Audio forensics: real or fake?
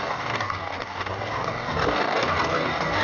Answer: fake